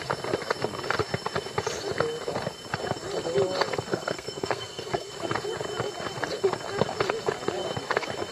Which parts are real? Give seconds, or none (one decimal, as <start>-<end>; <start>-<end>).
0.0-3.9; 5.1-8.3